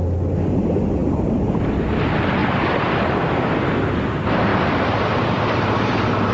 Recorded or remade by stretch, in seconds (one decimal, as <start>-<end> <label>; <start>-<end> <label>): 0.0-2.4 recorded; 2.4-3.2 remade; 3.2-4.5 recorded; 4.5-6.3 remade